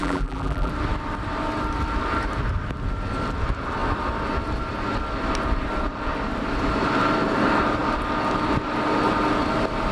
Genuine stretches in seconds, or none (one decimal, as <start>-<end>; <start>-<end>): 0.7-9.9